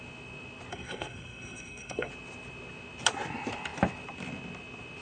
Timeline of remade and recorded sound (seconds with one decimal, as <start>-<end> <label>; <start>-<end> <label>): 0.0-0.7 recorded; 0.7-2.1 remade; 2.1-5.0 recorded